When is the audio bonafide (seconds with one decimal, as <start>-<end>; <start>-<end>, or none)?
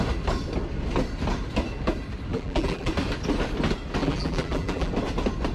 0.0-2.3; 2.9-4.0; 4.9-5.5